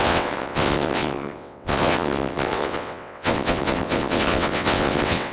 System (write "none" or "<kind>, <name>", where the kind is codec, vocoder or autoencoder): vocoder, WaveNeXt